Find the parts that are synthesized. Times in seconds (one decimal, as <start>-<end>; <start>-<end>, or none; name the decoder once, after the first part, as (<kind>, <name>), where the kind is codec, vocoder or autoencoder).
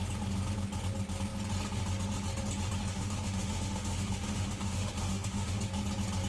2.9-5.6 (autoencoder, DAC-VAE)